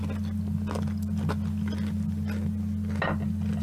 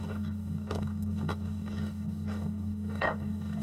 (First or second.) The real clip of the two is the first